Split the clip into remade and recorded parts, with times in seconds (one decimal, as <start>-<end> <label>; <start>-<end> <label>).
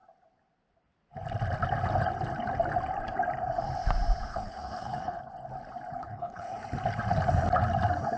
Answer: 0.0-4.3 recorded; 4.3-5.2 remade; 5.2-6.0 recorded; 6.0-6.6 remade; 6.6-8.2 recorded